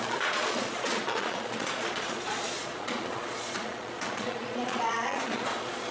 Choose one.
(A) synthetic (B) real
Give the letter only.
A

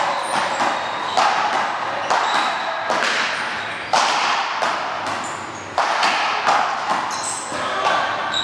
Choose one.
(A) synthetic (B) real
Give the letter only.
B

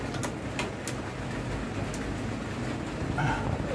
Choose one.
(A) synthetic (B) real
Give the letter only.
B